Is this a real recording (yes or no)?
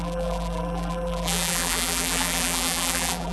no